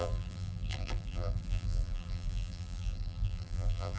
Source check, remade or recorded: remade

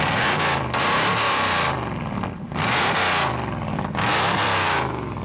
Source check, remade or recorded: remade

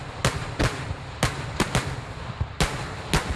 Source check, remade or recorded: recorded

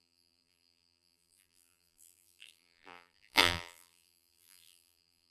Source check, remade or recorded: remade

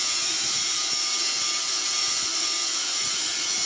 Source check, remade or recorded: remade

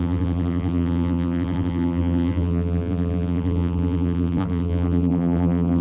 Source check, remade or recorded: remade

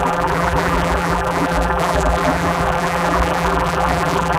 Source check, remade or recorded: remade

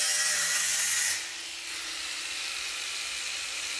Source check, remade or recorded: recorded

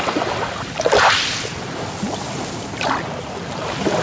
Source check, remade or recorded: recorded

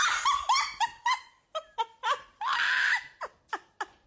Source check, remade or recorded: recorded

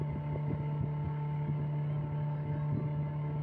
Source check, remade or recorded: recorded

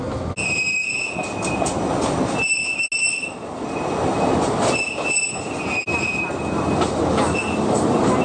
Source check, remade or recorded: recorded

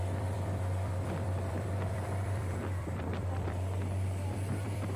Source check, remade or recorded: remade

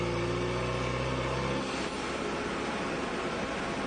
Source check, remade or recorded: recorded